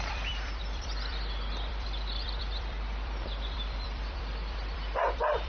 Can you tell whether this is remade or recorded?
remade